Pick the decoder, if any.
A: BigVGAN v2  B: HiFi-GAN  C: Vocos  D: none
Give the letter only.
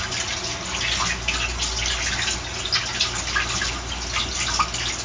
D